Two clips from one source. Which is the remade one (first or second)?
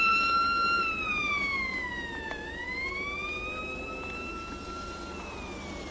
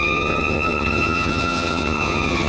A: second